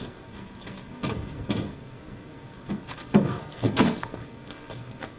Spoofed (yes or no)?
yes